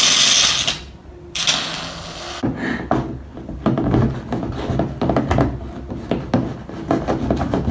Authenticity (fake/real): real